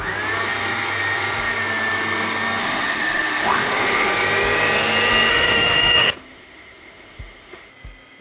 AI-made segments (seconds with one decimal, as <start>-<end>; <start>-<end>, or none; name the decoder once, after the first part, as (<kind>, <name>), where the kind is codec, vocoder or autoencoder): 2.6-4.1 (autoencoder, DAC-VAE); 5.3-7.7